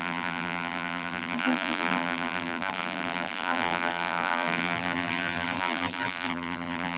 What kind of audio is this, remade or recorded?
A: remade